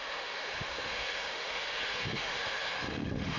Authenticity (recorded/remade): remade